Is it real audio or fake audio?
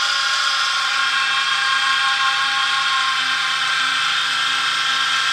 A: fake